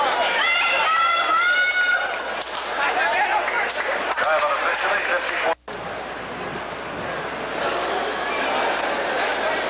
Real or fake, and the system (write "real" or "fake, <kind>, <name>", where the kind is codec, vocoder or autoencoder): real